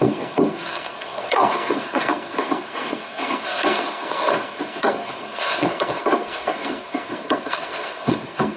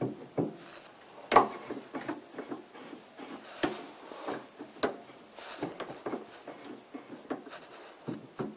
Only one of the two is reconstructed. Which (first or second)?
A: first